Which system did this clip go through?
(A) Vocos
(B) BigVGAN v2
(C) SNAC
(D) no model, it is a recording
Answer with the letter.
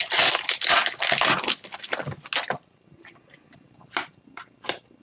D